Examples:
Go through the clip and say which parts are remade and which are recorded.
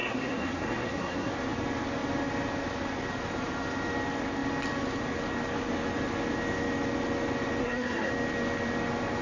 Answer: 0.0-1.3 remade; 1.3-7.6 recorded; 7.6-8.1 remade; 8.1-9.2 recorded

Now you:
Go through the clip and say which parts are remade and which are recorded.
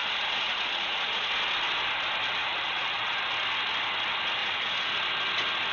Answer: 0.0-1.3 remade; 1.3-2.4 recorded; 2.4-3.2 remade; 3.2-4.4 recorded; 4.4-4.9 remade; 4.9-5.7 recorded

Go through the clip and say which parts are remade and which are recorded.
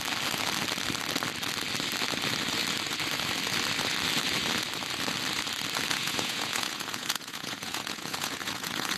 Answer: 0.0-5.9 recorded; 5.9-9.0 remade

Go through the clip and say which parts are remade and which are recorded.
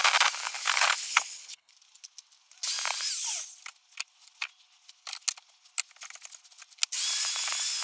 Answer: 0.0-0.4 recorded; 0.4-1.7 remade; 1.7-7.8 recorded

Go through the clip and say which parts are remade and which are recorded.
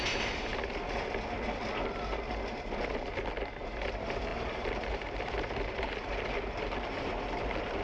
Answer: 0.0-4.3 recorded; 4.3-7.8 remade